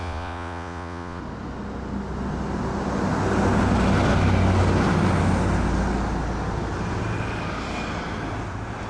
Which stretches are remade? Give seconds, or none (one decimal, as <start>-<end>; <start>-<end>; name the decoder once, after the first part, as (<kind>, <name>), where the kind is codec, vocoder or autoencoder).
0.0-1.2 (vocoder, Vocos)